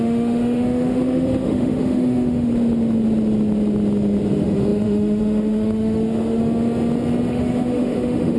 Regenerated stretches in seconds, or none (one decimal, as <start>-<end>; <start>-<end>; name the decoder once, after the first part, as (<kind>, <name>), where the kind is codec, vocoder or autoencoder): 0.0-2.5 (autoencoder, DAC-VAE); 4.3-6.4; 7.3-8.4